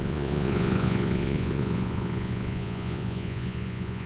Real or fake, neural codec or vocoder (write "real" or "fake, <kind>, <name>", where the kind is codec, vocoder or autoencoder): fake, vocoder, Vocos